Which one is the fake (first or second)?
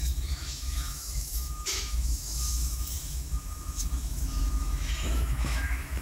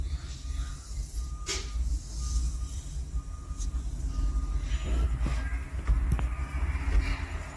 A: first